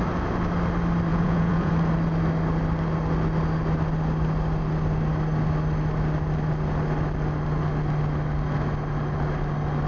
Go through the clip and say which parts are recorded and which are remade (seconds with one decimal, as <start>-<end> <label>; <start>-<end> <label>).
0.0-1.1 recorded; 1.1-1.7 remade; 1.7-9.9 recorded